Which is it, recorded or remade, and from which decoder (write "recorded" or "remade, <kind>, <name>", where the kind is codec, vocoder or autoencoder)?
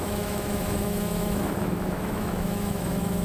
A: remade, autoencoder, DAC-VAE